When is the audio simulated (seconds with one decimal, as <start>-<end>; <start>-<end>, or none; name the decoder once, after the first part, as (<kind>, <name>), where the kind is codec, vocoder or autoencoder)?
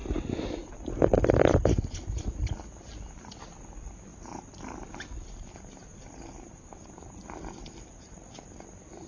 4.1-5.0 (vocoder, BigVGAN v2)